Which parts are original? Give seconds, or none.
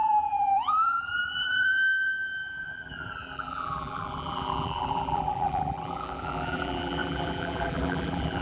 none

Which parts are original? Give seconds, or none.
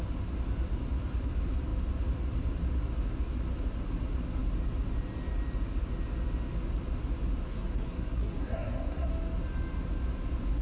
0.0-7.5; 9.1-10.6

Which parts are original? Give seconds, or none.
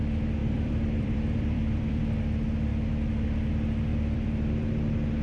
0.0-0.4; 2.0-2.7; 3.5-3.9; 4.7-5.2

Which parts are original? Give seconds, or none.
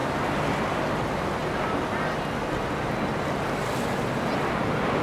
0.0-5.0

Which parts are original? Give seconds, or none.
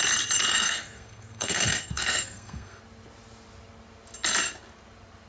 0.0-0.5; 2.8-5.3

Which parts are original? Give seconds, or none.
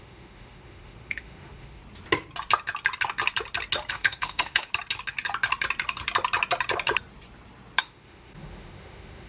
1.8-3.9; 4.7-7.8